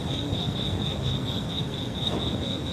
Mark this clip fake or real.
fake